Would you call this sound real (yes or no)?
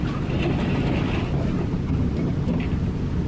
yes